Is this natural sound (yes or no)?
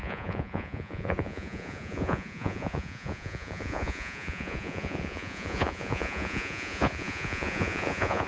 no